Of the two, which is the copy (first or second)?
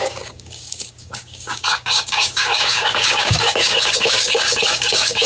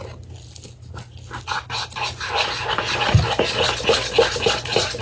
first